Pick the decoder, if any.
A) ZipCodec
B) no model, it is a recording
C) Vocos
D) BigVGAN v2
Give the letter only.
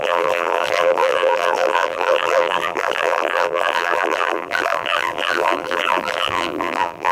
D